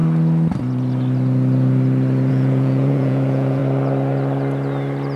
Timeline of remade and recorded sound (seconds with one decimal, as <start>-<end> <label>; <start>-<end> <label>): 0.0-2.3 recorded; 2.3-3.6 remade; 3.6-5.2 recorded

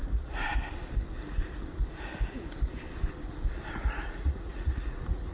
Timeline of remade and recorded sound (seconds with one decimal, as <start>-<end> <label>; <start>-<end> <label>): 0.0-0.5 remade; 0.5-3.7 recorded; 3.7-5.3 remade